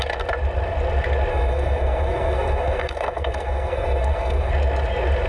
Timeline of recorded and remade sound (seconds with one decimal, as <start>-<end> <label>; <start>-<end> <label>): 0.0-1.3 recorded; 1.3-4.5 remade; 4.5-5.3 recorded